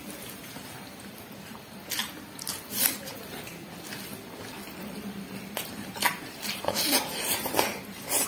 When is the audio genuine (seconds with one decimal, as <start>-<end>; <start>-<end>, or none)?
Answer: 2.0-4.8